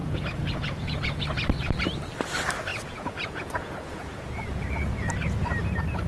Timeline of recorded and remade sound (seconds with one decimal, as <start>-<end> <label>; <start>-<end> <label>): 0.0-1.2 remade; 1.2-2.7 recorded; 2.7-4.6 remade; 4.6-6.1 recorded

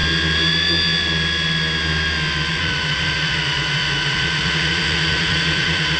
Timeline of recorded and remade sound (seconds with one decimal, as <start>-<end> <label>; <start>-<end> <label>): 0.0-2.5 recorded; 2.5-6.0 remade

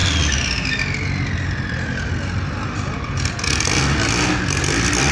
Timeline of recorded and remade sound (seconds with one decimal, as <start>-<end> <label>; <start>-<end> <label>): 0.0-5.1 recorded

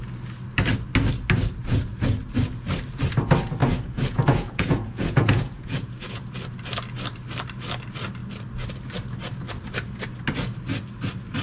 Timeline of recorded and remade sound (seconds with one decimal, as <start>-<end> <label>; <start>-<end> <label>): 0.0-1.6 recorded; 1.6-2.2 remade; 2.2-3.6 recorded; 3.6-6.2 remade; 6.2-11.4 recorded